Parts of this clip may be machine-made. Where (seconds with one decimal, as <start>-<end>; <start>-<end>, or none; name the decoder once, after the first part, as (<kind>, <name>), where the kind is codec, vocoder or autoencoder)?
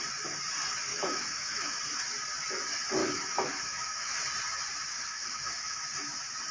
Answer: 0.9-1.8 (autoencoder, DAC-VAE); 3.0-4.2; 4.9-5.8